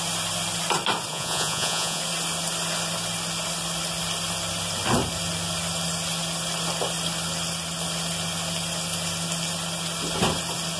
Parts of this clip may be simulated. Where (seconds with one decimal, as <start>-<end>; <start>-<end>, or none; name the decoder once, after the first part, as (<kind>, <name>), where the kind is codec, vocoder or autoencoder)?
1.1-2.0 (vocoder, Vocos)